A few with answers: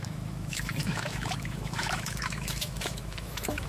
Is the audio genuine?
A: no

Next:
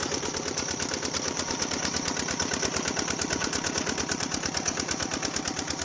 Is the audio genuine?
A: yes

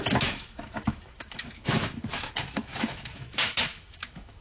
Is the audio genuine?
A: no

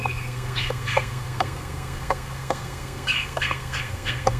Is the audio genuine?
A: no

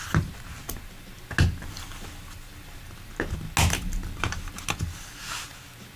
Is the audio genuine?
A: yes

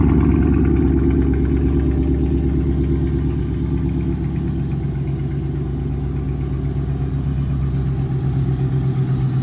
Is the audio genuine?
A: yes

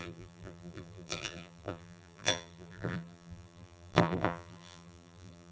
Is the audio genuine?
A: no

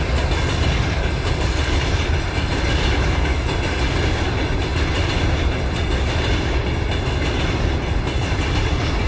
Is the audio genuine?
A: yes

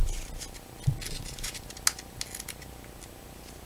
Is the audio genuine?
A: yes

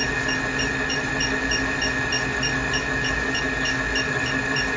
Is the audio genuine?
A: yes